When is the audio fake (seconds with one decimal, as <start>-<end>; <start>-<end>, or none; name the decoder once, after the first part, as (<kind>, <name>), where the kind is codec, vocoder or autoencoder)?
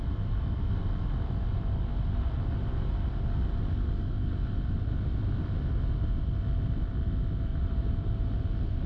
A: 7.5-8.3 (vocoder, BigVGAN v2)